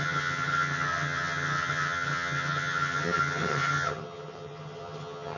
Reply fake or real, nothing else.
fake